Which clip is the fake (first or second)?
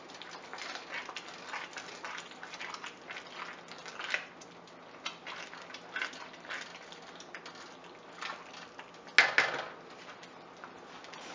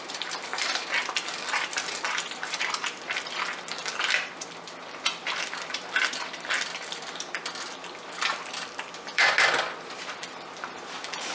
second